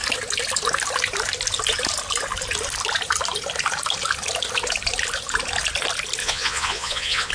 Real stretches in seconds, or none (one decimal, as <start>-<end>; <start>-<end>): 0.0-6.2